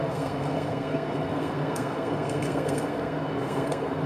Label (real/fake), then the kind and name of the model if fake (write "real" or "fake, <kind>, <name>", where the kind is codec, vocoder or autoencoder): fake, codec, SNAC